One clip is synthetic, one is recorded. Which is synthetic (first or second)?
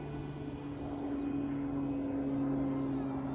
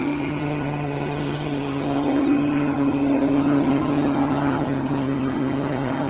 second